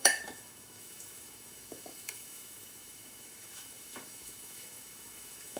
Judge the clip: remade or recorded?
remade